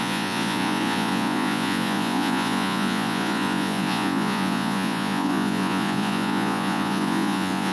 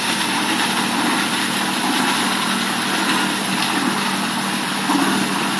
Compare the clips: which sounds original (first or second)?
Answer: second